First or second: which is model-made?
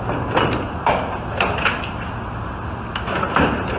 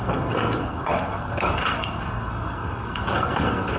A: second